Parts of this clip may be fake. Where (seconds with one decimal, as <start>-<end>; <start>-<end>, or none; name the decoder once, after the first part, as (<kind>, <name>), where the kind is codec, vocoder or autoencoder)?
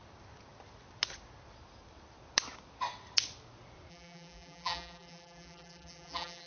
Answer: 3.9-6.5 (vocoder, BigVGAN v2)